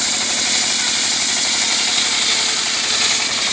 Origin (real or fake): fake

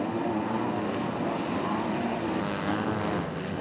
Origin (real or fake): real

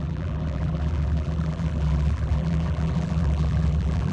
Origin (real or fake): fake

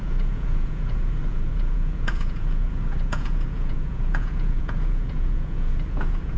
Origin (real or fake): fake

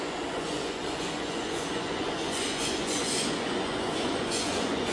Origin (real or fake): fake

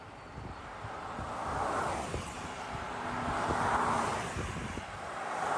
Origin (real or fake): real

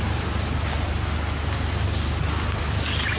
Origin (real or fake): real